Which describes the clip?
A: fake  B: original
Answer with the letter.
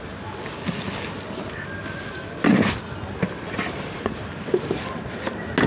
B